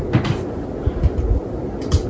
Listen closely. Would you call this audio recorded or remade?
recorded